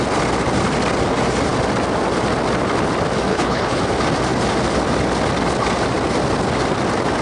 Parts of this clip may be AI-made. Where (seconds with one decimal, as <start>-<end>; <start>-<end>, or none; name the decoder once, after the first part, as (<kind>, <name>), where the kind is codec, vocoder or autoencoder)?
3.3-3.8 (codec, HILCodec)

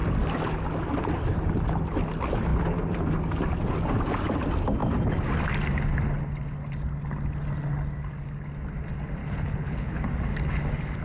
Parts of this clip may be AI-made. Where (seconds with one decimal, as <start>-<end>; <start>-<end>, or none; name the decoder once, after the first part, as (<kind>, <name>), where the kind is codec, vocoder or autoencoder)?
9.2-10.0 (codec, HILCodec)

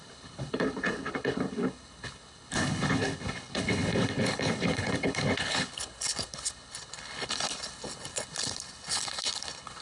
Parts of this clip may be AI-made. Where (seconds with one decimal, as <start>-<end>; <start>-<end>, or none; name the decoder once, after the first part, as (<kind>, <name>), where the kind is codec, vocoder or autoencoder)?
0.0-9.8 (codec, HILCodec)

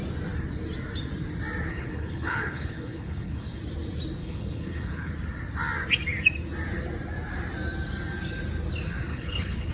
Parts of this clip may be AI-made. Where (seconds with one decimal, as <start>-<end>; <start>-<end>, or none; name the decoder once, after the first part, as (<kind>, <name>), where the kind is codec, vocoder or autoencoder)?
1.7-3.6 (codec, HILCodec); 4.2-5.1; 9.1-9.7